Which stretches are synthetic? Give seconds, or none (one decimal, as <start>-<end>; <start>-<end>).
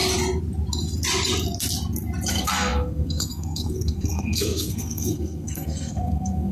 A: 2.3-6.5